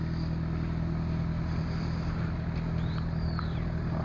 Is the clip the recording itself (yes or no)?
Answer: yes